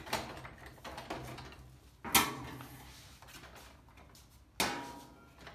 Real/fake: real